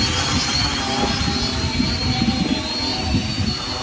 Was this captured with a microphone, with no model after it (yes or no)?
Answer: yes